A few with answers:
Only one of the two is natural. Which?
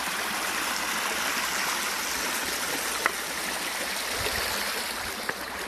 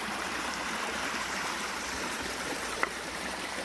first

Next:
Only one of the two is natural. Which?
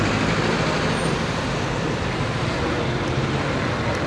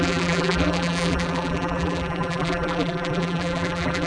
first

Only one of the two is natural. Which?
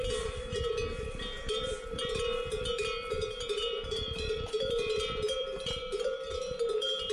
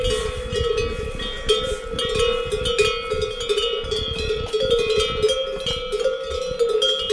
second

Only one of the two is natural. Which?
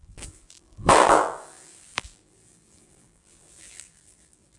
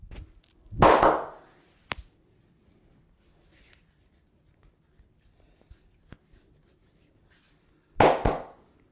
second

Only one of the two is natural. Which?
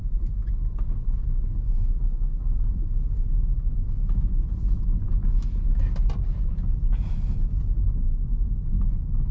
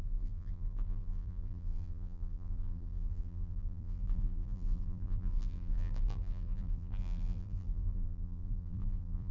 first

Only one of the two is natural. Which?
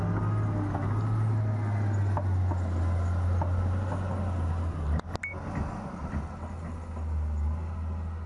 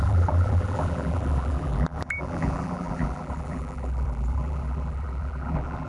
first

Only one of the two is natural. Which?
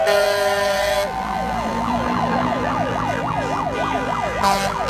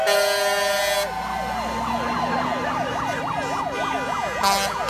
second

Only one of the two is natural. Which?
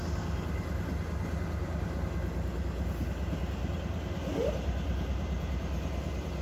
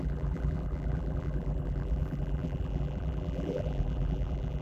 first